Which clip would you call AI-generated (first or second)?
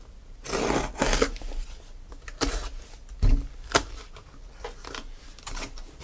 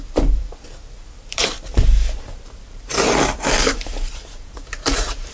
second